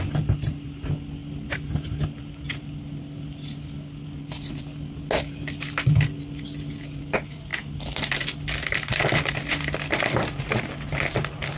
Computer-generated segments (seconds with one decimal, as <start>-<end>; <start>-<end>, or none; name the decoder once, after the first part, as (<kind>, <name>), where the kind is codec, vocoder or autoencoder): none